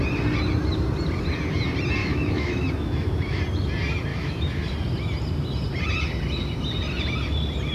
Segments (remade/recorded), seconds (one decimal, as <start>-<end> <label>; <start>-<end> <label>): 0.0-2.0 recorded; 2.0-3.4 remade; 3.4-4.1 recorded; 4.1-4.7 remade; 4.7-7.7 recorded